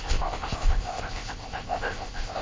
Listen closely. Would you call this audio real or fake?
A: fake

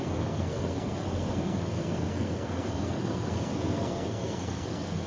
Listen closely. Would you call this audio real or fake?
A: fake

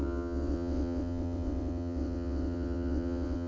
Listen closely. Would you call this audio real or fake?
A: fake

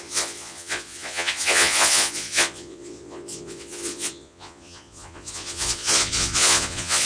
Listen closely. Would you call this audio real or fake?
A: fake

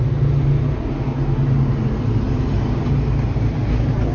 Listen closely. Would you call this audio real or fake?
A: real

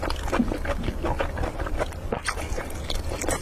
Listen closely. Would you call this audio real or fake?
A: real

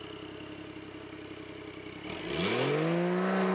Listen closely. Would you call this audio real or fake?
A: real